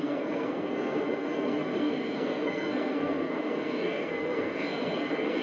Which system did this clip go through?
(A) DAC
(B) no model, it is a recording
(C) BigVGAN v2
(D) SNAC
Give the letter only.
D